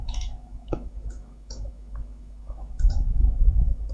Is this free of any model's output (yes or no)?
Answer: no